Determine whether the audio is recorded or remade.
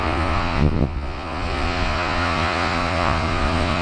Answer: remade